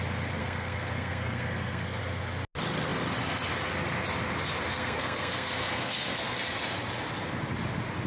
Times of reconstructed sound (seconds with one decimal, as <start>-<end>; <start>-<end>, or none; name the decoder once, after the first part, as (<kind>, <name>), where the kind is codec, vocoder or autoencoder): 0.4-2.0 (codec, SNAC); 4.7-6.2